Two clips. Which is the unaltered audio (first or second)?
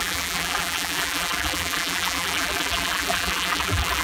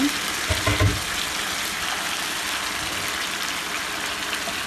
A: second